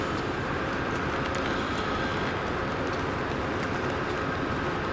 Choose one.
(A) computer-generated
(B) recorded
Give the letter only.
B